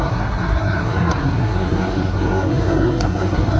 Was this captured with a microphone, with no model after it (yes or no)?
no